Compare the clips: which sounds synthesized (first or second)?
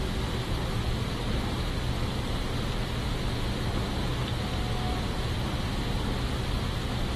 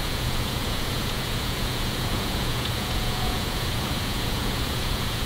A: second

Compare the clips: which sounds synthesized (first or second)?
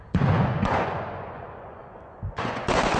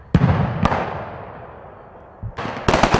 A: first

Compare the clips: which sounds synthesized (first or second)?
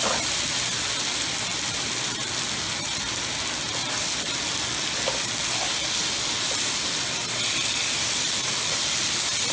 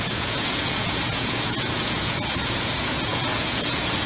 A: second